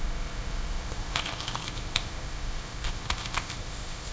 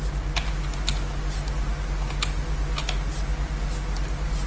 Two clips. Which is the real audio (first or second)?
second